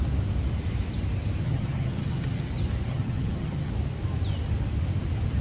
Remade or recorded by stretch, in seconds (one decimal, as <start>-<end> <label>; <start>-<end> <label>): 0.0-1.4 recorded; 1.4-2.5 remade; 2.5-2.9 recorded; 2.9-3.7 remade; 3.7-5.4 recorded